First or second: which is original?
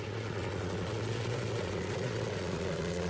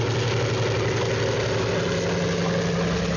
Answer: second